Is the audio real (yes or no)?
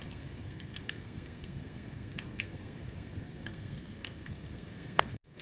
no